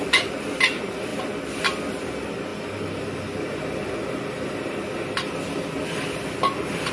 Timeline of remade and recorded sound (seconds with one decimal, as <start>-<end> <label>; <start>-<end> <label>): 0.0-1.1 recorded; 1.1-1.6 remade; 1.6-2.5 recorded; 2.5-6.9 remade